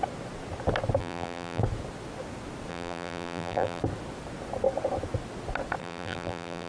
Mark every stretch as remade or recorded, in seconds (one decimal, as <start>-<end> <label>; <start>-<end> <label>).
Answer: 0.0-1.0 recorded; 1.0-1.6 remade; 1.6-2.7 recorded; 2.7-3.8 remade; 3.8-5.8 recorded; 5.8-6.7 remade